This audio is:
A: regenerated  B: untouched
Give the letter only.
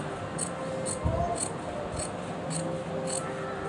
B